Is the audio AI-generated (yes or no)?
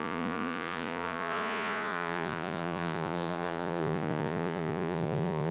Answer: yes